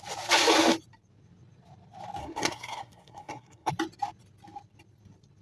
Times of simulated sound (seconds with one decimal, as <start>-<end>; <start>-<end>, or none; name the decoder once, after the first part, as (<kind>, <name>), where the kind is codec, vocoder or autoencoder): 2.2-3.7 (codec, SNAC)